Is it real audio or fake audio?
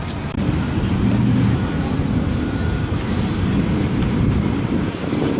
fake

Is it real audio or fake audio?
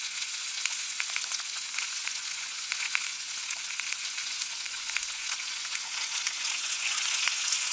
fake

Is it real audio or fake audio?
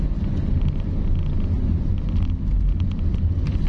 real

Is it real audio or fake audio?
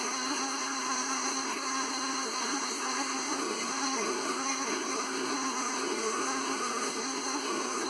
fake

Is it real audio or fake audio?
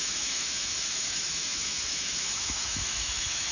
fake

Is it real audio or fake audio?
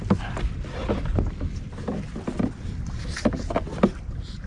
real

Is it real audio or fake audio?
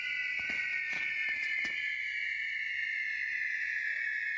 fake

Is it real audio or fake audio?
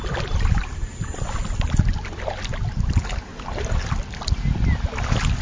real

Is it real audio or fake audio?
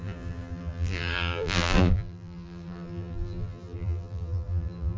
fake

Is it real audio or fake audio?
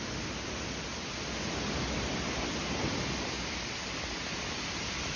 real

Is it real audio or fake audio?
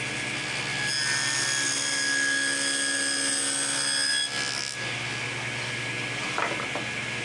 real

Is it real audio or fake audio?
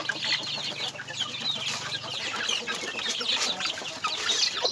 real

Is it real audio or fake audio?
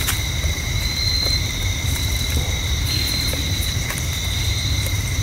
fake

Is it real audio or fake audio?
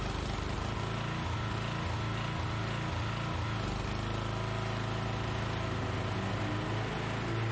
real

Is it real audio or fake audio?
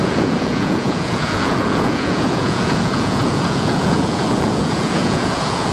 fake